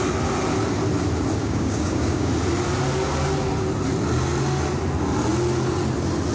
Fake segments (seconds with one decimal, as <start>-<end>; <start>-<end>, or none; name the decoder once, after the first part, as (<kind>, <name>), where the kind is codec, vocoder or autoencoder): 1.4-2.3 (codec, DAC)